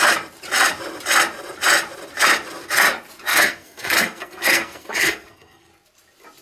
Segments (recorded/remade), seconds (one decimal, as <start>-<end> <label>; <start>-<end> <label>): 0.0-3.3 recorded; 3.3-5.7 remade; 5.7-6.4 recorded